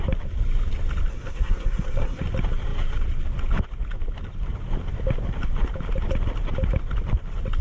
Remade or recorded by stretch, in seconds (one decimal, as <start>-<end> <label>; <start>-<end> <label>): 0.0-1.1 recorded; 1.1-2.2 remade; 2.2-7.6 recorded